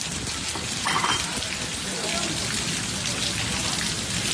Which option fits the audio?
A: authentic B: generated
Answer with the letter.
A